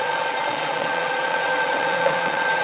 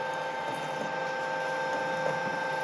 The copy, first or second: first